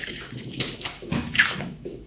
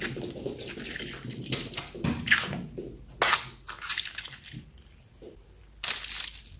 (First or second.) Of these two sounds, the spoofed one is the first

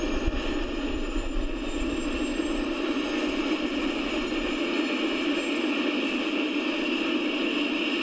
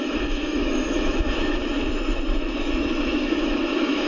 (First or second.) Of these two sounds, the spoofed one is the second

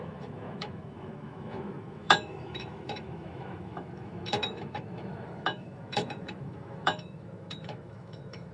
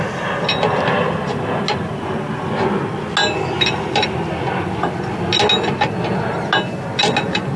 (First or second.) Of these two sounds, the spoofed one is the first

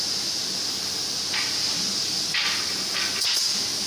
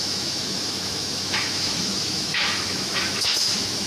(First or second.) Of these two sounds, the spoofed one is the second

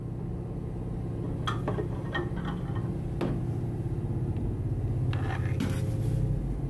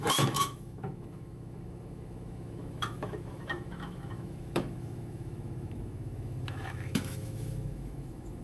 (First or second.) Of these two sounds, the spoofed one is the second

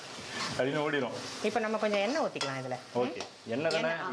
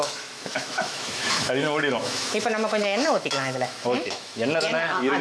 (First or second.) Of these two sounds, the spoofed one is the second